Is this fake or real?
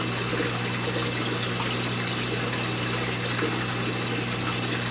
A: real